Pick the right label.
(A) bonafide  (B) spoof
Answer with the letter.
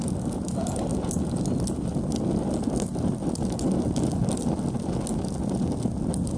A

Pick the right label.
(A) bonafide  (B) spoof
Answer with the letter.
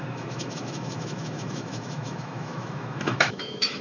B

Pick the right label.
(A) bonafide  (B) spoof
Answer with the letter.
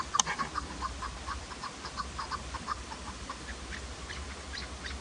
A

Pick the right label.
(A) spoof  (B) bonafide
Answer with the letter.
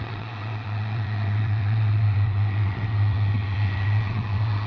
A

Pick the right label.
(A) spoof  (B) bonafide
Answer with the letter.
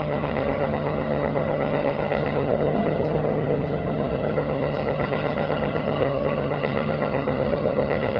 A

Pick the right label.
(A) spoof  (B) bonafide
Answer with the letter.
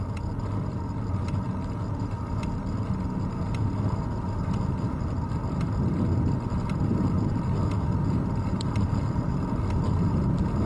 B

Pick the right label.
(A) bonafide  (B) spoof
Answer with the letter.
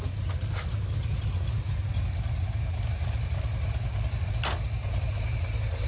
A